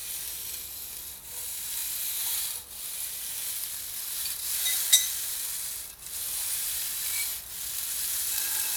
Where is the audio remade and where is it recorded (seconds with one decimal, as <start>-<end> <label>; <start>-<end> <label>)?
0.0-1.2 recorded; 1.2-1.8 remade; 1.8-6.4 recorded; 6.4-7.3 remade; 7.3-7.9 recorded; 7.9-8.8 remade